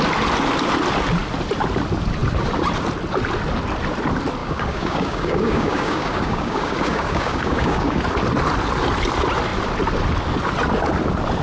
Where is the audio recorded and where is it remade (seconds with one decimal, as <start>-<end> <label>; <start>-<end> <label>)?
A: 0.0-4.4 recorded; 4.4-8.0 remade; 8.0-11.4 recorded